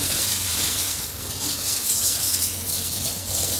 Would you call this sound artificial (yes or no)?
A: yes